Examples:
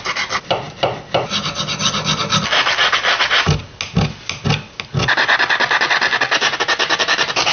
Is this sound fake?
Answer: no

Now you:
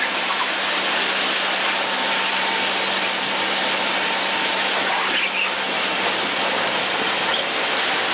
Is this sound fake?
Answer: no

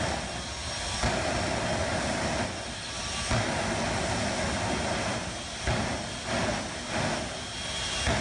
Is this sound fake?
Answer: no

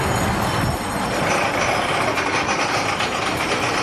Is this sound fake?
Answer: no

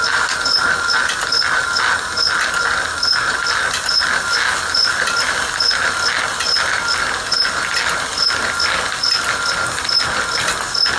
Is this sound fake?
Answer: no